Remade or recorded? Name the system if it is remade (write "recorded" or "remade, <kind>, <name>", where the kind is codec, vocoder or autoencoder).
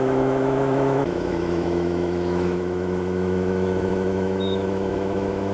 remade, autoencoder, DAC-VAE